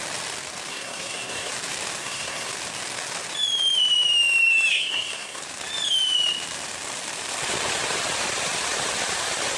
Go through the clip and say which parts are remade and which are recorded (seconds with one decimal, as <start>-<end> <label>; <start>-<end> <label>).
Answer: 0.0-0.7 recorded; 0.7-1.5 remade; 1.5-2.0 recorded; 2.0-2.5 remade; 2.5-4.7 recorded; 4.7-5.4 remade; 5.4-9.6 recorded